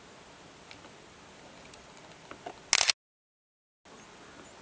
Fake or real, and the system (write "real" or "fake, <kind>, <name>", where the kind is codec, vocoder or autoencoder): real